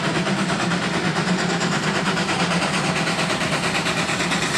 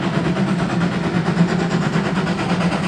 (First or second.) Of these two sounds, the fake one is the first